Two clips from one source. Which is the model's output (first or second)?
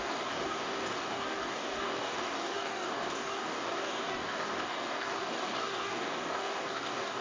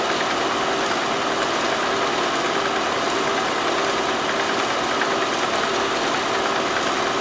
first